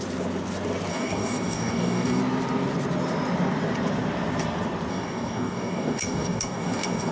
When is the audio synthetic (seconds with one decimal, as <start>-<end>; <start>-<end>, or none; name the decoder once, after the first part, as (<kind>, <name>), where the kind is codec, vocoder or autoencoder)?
0.9-2.2 (codec, DAC); 4.9-7.1